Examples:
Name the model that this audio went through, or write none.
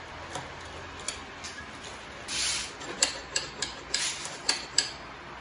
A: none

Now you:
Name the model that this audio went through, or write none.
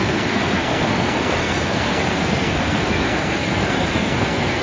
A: codec, SNAC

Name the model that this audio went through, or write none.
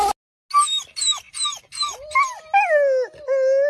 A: none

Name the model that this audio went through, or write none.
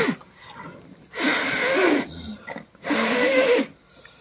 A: none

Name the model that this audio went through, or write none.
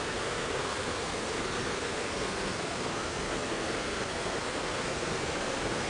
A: codec, SNAC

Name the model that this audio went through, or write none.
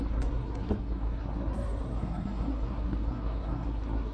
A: codec, SNAC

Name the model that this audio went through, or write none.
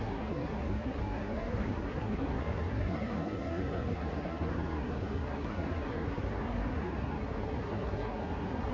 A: codec, SNAC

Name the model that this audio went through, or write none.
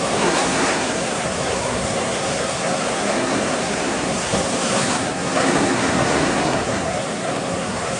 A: codec, SNAC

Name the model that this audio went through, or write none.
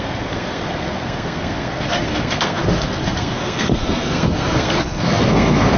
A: codec, SNAC